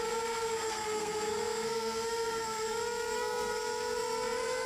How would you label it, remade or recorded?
remade